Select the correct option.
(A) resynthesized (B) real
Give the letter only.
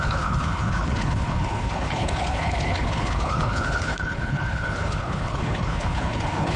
A